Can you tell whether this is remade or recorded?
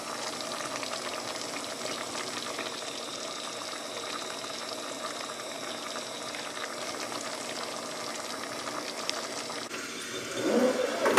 recorded